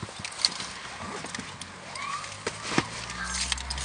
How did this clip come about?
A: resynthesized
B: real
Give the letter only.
B